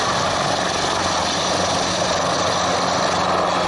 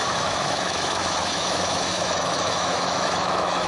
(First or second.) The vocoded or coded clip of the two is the second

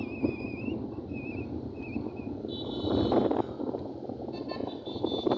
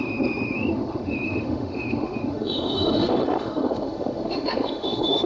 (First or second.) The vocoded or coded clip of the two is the second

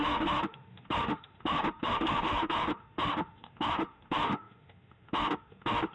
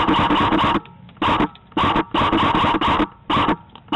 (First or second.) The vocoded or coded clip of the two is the first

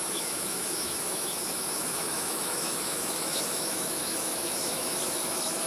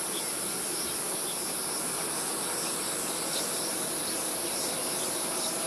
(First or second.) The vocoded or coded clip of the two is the first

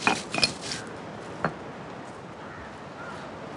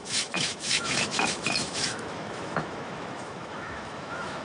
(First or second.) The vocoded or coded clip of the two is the second